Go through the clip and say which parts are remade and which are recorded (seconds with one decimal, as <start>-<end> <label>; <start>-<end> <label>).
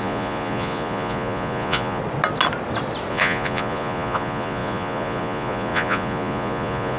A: 0.0-2.0 remade; 2.0-3.1 recorded; 3.1-7.0 remade